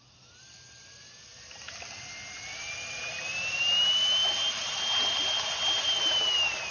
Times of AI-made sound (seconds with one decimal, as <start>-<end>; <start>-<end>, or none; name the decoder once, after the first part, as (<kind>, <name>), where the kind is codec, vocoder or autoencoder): 2.5-3.0 (vocoder, BigVGAN v2)